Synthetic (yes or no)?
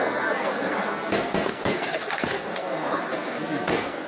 yes